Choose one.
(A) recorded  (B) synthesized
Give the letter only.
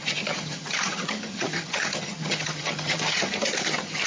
B